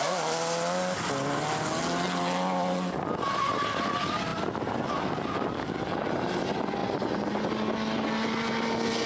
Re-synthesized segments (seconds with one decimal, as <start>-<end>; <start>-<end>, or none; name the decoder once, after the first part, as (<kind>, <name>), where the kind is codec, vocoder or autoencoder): none